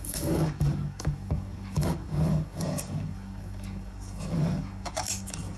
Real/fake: fake